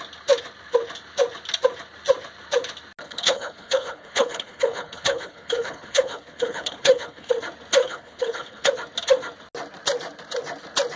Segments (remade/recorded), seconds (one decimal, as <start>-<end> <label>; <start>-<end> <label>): 0.0-3.0 recorded; 3.0-7.3 remade; 7.3-7.8 recorded; 7.8-8.7 remade; 8.7-11.0 recorded